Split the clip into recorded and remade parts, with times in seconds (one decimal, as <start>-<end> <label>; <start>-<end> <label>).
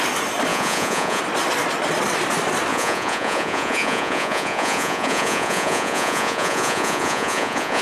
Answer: 0.0-0.5 recorded; 0.5-1.2 remade; 1.2-2.7 recorded; 2.7-7.8 remade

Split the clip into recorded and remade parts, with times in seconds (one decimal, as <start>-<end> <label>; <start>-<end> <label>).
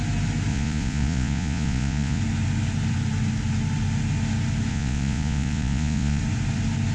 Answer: 0.0-0.5 recorded; 0.5-2.2 remade; 2.2-4.7 recorded; 4.7-6.2 remade; 6.2-6.9 recorded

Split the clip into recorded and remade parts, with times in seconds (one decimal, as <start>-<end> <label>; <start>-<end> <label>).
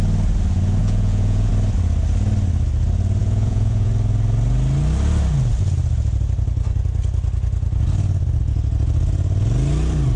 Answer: 0.0-0.8 recorded; 0.8-1.5 remade; 1.5-3.2 recorded; 3.2-3.9 remade; 3.9-10.2 recorded